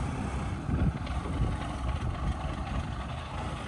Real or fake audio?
real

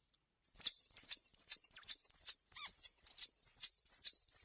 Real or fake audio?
fake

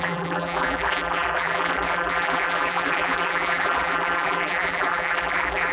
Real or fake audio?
fake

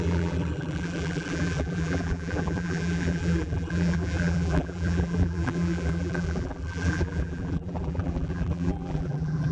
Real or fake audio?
fake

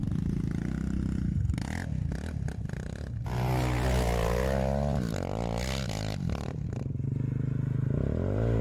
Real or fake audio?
real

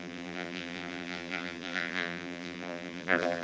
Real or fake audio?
fake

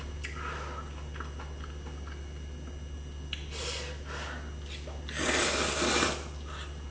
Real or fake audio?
real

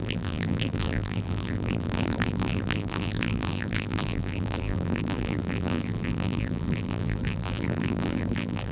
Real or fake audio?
fake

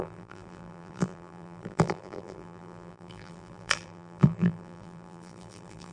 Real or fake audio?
fake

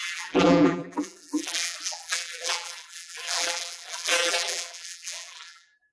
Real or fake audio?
fake